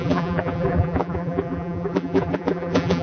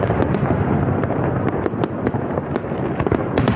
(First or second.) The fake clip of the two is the first